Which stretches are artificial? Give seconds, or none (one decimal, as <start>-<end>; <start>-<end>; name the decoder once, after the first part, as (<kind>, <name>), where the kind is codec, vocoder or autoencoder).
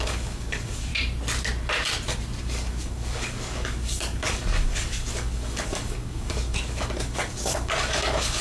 0.0-0.9 (codec, DAC); 2.4-8.4